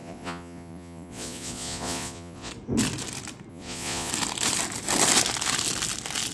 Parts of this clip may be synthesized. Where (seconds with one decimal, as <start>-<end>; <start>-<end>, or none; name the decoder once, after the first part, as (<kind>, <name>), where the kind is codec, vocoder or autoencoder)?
0.0-2.5 (vocoder, Vocos); 3.5-4.1